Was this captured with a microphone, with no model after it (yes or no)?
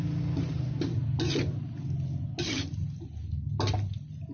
yes